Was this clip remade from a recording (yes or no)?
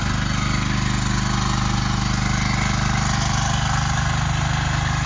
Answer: no